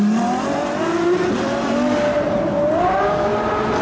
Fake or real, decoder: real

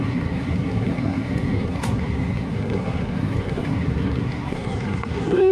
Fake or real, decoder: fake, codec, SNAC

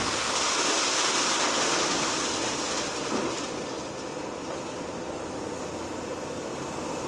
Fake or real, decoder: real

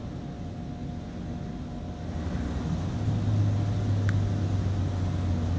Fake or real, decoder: real